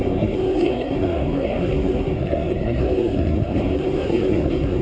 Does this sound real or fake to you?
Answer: fake